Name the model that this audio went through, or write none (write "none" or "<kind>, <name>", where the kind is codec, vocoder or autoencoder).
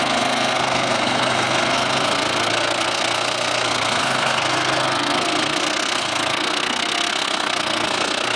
codec, SNAC